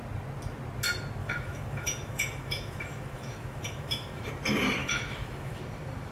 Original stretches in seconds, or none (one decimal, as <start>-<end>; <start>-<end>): 0.0-1.2; 4.3-4.8; 5.6-6.1